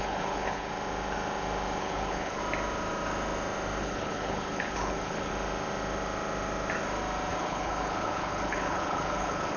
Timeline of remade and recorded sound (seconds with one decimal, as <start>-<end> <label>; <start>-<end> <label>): 0.0-0.7 remade; 0.7-1.8 recorded; 1.8-2.4 remade; 2.4-3.8 recorded; 3.8-5.3 remade; 5.3-7.3 recorded; 7.3-9.6 remade